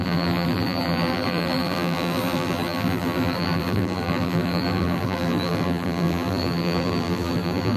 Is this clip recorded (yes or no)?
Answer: no